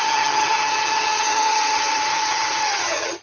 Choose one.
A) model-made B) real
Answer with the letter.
A